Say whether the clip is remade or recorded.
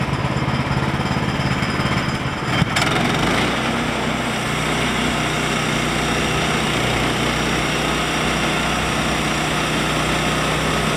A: recorded